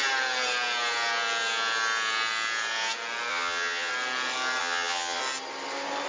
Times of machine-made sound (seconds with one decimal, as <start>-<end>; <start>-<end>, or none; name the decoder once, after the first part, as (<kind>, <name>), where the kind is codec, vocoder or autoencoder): 3.3-3.9 (vocoder, HiFi-GAN); 4.6-5.2